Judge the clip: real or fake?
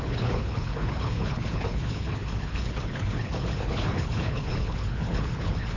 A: fake